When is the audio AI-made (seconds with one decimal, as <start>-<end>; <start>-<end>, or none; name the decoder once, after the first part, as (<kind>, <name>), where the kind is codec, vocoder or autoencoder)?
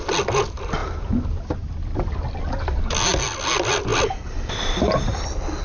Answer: none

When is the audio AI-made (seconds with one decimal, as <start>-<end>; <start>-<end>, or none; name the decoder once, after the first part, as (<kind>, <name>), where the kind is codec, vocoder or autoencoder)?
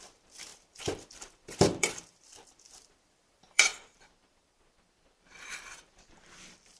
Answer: 0.0-6.8 (vocoder, BigVGAN v2)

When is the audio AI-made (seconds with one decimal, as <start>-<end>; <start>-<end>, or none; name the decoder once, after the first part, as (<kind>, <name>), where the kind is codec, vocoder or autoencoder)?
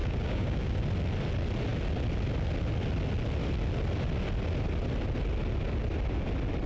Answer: 0.0-0.8 (codec, DAC)